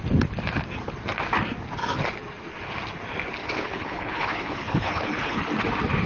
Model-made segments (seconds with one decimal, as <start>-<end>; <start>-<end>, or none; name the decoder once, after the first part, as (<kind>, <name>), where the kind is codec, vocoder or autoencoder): 3.4-5.4 (codec, HILCodec)